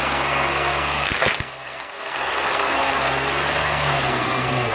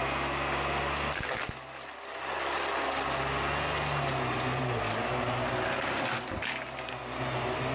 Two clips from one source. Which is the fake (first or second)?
first